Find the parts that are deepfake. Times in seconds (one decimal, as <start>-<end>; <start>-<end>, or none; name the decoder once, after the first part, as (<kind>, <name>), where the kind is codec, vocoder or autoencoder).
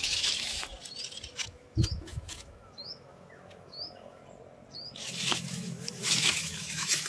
0.0-0.7 (autoencoder, DAC-VAE); 1.3-4.2; 5.0-7.1